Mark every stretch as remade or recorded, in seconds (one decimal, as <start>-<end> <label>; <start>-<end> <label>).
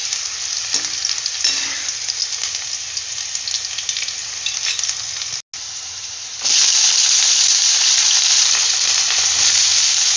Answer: 0.0-0.9 remade; 0.9-6.6 recorded; 6.6-9.6 remade; 9.6-10.2 recorded